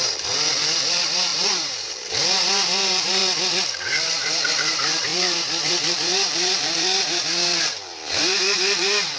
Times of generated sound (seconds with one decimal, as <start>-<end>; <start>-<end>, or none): 0.0-3.2; 4.0-9.2